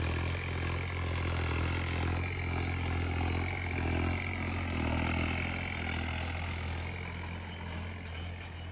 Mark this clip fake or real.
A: real